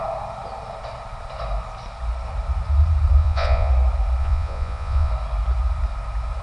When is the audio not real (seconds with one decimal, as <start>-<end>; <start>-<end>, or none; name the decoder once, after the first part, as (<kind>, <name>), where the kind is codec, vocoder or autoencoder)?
3.2-3.7 (vocoder, Vocos); 4.2-5.1